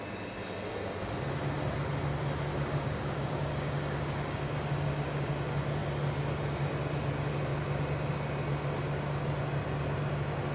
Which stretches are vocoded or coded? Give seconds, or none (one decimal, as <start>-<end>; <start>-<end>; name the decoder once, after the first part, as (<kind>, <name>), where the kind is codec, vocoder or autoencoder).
2.5-5.3 (codec, DAC)